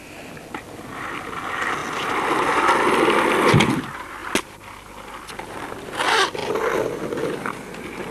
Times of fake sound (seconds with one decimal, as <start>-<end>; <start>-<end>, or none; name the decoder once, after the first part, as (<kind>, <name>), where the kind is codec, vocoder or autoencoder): none